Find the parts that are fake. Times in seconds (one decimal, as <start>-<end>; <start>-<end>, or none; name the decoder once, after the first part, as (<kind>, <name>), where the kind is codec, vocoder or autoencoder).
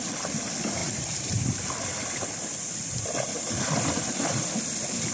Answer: none